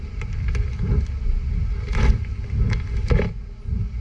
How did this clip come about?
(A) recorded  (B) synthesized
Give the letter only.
A